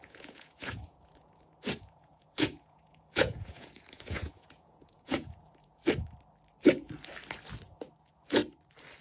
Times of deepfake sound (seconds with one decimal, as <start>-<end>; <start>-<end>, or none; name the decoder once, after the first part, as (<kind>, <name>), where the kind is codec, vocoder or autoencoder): 0.0-5.8 (vocoder, Vocos); 8.0-8.4